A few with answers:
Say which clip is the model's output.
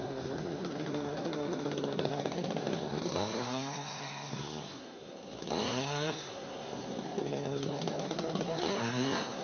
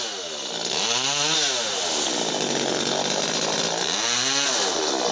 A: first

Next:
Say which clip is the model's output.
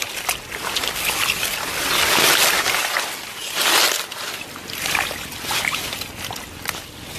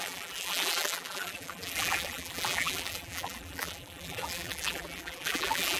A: second